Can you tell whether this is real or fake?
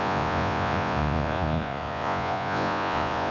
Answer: fake